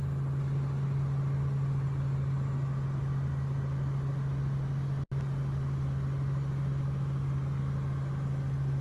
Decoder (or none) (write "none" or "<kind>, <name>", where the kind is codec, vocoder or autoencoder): none